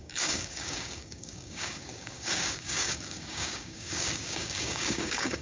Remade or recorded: remade